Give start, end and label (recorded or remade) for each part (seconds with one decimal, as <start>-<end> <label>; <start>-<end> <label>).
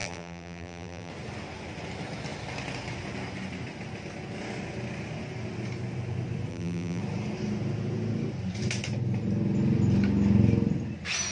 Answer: 0.0-1.1 remade; 1.1-6.5 recorded; 6.5-7.0 remade; 7.0-11.3 recorded